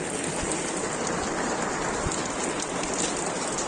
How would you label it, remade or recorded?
recorded